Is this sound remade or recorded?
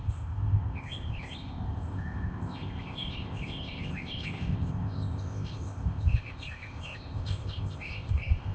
remade